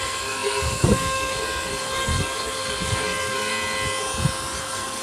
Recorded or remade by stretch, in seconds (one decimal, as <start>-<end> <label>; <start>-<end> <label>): 0.0-3.5 remade; 3.5-4.6 recorded; 4.6-5.0 remade